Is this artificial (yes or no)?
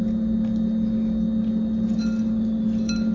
no